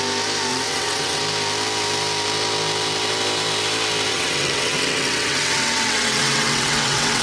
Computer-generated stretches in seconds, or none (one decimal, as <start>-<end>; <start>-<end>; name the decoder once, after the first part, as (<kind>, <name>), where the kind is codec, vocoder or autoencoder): 0.5-1.2 (vocoder, WaveNeXt); 4.1-7.2